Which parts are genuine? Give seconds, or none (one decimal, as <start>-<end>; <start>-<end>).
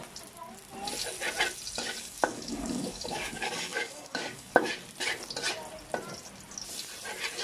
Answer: 0.0-1.9; 4.7-7.4